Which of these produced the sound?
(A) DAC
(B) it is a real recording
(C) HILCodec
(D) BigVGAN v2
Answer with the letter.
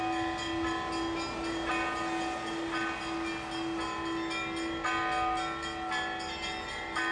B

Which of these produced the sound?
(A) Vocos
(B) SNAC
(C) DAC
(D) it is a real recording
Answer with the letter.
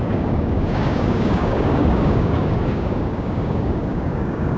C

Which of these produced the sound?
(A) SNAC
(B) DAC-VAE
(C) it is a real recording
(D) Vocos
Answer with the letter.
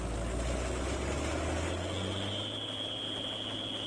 C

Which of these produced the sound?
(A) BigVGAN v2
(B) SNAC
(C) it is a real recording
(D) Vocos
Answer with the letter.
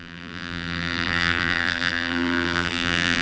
A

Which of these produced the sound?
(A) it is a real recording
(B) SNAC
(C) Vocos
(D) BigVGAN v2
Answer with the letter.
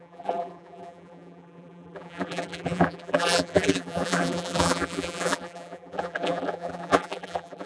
D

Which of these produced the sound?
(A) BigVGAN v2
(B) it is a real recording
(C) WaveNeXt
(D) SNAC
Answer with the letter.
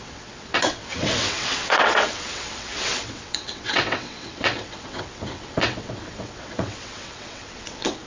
C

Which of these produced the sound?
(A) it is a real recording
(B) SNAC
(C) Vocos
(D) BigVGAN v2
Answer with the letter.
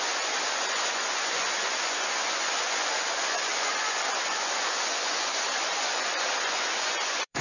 C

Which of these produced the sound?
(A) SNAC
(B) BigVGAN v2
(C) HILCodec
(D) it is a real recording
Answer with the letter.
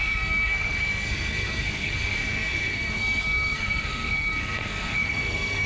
A